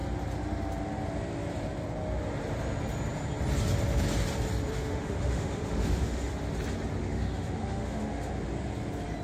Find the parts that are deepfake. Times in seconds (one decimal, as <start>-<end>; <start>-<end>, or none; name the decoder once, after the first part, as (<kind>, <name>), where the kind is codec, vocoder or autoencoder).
4.7-6.3 (autoencoder, DAC-VAE); 7.0-8.3